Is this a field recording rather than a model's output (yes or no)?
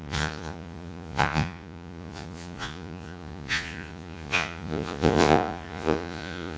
no